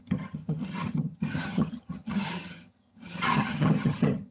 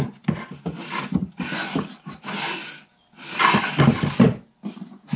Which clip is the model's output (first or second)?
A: first